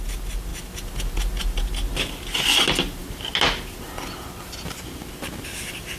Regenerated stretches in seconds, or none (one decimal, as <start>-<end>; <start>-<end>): none